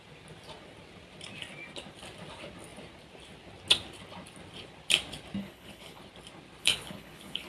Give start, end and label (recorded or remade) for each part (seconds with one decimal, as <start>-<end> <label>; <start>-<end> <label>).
0.0-5.4 recorded; 5.4-6.0 remade; 6.0-6.6 recorded; 6.6-7.5 remade